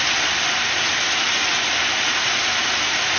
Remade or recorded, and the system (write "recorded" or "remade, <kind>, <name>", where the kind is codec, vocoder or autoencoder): recorded